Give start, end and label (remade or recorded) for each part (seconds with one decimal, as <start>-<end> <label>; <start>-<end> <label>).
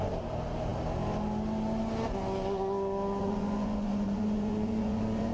0.0-3.2 recorded; 3.2-5.3 remade